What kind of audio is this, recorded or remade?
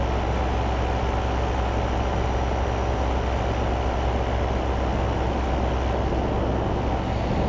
recorded